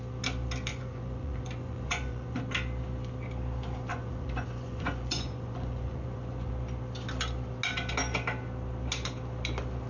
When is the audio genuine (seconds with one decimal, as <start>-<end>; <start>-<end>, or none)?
0.0-0.7; 2.4-3.9; 6.5-9.9